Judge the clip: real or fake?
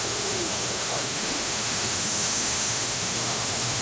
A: fake